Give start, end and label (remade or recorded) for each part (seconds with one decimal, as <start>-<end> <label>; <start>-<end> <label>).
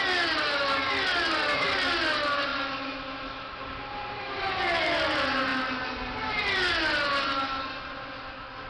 0.0-8.7 recorded